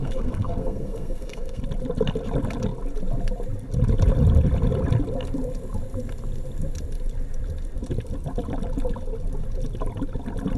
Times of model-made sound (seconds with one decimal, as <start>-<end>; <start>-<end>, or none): 0.0-1.6